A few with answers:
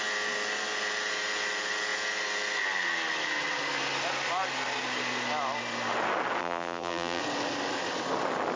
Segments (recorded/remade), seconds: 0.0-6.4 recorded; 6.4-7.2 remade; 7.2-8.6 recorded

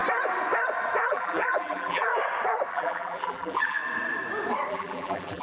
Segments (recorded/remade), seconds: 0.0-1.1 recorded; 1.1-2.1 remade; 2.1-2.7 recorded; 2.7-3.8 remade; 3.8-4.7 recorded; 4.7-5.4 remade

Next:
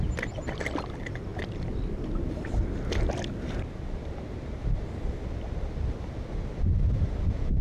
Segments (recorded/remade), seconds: 0.0-7.6 recorded

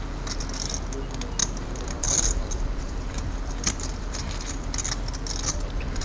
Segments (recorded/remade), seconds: 0.0-1.4 recorded; 1.4-5.0 remade; 5.0-6.0 recorded

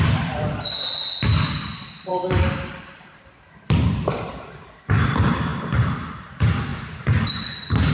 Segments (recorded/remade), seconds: 0.0-2.1 recorded; 2.1-4.9 remade; 4.9-6.7 recorded; 6.7-7.4 remade; 7.4-7.9 recorded

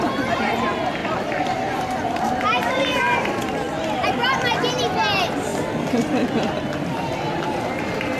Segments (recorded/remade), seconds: 0.0-1.0 recorded; 1.0-3.2 remade; 3.2-5.5 recorded; 5.5-8.2 remade

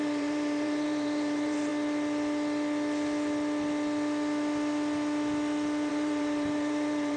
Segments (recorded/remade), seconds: 0.0-1.7 remade; 1.7-5.9 recorded; 5.9-7.2 remade